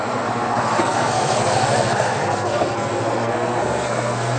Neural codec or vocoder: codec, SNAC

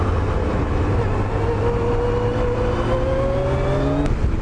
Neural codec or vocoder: none